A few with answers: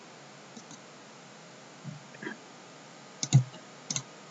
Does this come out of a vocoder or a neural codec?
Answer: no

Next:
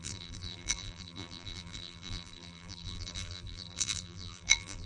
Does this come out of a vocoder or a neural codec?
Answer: yes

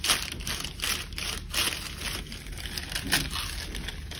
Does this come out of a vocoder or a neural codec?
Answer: no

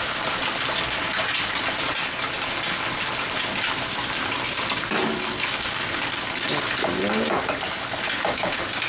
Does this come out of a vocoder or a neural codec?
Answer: no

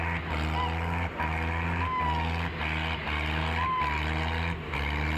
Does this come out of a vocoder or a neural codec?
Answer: no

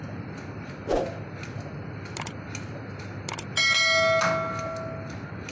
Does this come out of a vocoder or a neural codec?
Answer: no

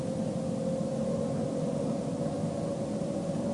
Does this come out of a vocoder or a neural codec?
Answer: no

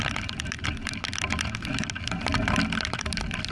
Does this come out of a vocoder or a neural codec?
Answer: yes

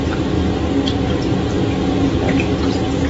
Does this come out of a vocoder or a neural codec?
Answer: no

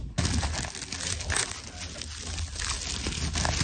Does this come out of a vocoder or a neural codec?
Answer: no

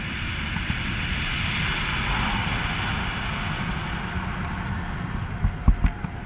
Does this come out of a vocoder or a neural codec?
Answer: no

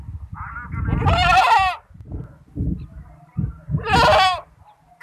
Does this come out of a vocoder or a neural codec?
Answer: no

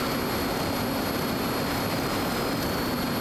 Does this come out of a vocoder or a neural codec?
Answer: no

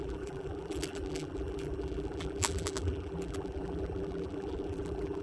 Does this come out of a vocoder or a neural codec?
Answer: yes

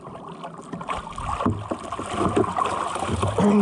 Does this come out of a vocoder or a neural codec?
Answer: no